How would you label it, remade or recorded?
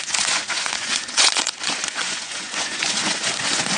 remade